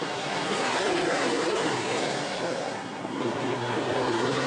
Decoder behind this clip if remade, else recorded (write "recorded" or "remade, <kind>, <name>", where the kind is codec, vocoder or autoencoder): remade, codec, SNAC